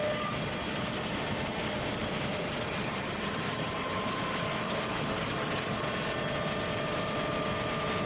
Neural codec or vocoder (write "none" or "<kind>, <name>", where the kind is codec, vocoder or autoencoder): none